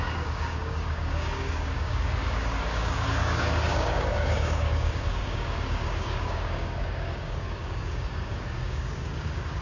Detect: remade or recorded remade